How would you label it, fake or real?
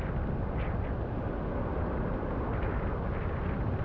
real